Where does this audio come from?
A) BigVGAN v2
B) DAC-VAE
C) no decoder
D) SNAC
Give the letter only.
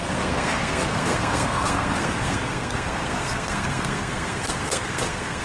D